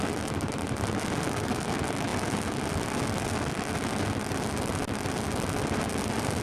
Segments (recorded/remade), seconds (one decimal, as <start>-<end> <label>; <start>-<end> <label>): 0.0-6.4 recorded